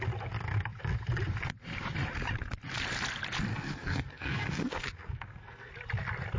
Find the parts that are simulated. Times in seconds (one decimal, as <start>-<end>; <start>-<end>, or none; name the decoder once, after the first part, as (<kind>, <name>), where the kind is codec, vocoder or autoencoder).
3.5-5.7 (codec, SNAC)